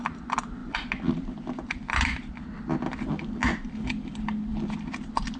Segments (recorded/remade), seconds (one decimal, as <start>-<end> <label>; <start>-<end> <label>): 0.0-0.6 recorded; 0.6-2.4 remade; 2.4-4.5 recorded; 4.5-5.4 remade